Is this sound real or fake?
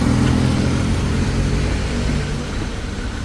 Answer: real